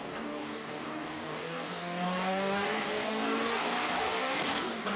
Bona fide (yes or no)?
no